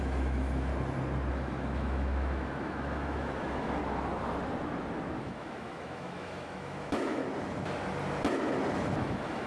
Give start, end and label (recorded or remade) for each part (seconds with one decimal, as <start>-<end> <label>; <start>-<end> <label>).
0.0-0.7 remade; 0.7-1.3 recorded; 1.3-3.8 remade; 3.8-5.2 recorded; 5.2-7.2 remade; 7.2-9.0 recorded; 9.0-9.5 remade